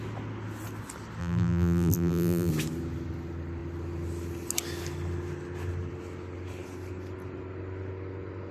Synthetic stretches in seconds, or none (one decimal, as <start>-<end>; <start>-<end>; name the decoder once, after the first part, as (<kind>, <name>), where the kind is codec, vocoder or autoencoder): 1.2-2.5 (vocoder, BigVGAN v2)